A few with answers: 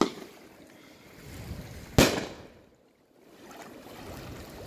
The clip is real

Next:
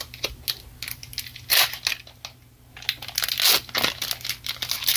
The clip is real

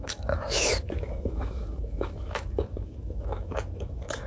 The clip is fake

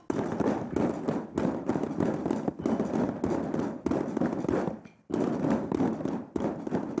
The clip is real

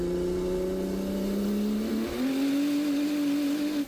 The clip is real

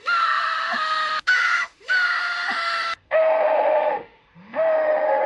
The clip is fake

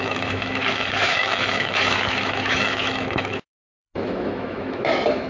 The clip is fake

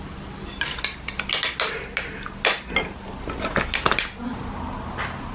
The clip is real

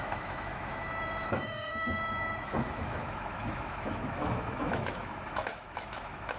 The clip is fake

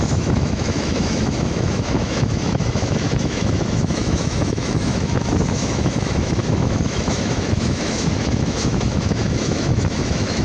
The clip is fake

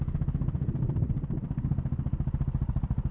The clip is real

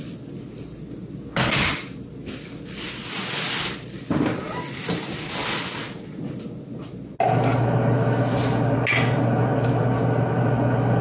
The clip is real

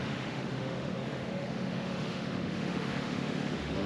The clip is fake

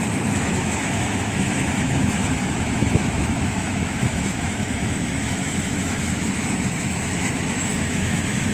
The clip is fake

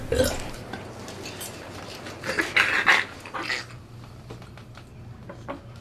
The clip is real